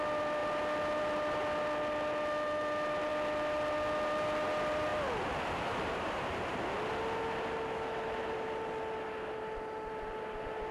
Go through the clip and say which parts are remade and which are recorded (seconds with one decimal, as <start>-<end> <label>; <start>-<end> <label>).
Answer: 0.0-3.1 remade; 3.1-4.1 recorded; 4.1-4.9 remade; 4.9-5.6 recorded; 5.6-10.7 remade